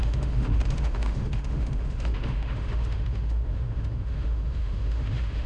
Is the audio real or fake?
fake